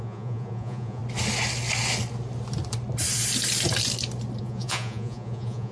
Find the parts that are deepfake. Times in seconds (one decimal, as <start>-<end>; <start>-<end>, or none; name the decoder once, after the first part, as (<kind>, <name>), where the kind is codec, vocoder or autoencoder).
0.0-1.0 (vocoder, Vocos); 4.4-5.7